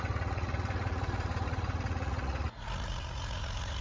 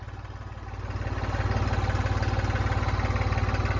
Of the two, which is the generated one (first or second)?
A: first